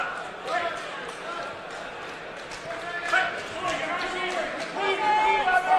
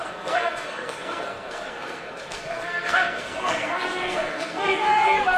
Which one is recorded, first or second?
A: first